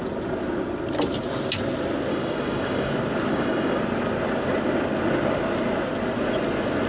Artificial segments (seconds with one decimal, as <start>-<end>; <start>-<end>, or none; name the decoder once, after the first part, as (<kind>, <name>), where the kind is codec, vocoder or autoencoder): 2.1-2.9 (codec, DAC); 3.3-3.8

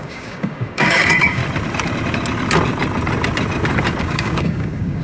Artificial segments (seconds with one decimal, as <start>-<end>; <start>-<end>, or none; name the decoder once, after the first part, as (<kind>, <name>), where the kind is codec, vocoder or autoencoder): 0.0-1.4 (codec, DAC); 4.0-5.0

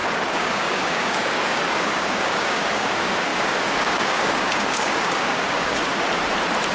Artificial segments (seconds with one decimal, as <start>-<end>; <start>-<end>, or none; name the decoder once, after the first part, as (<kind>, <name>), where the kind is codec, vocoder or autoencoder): 0.0-5.9 (codec, DAC)

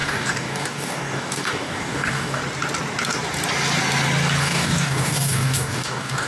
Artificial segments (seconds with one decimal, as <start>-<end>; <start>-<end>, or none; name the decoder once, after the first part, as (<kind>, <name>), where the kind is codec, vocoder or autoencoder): 0.0-2.4 (codec, DAC); 4.4-6.3

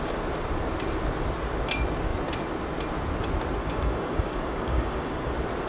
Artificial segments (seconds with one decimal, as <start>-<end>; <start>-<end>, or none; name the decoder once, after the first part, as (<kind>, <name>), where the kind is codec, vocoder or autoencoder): 3.6-5.3 (codec, DAC)